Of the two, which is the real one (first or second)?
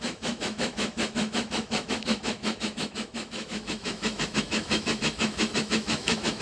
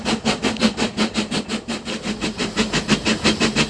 second